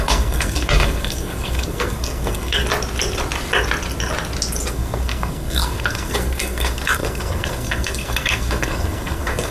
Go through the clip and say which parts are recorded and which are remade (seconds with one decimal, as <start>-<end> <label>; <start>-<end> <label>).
0.0-2.6 remade; 2.6-4.7 recorded; 4.7-9.5 remade